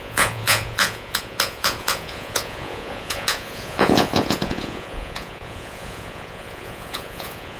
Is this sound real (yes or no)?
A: no